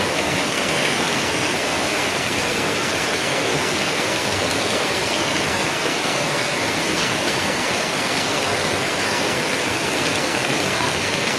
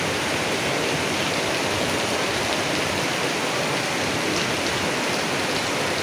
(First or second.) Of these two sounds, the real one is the second